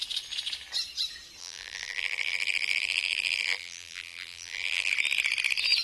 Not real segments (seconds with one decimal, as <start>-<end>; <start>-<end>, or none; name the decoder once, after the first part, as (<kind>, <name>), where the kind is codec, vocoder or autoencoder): 1.4-4.9 (vocoder, BigVGAN v2)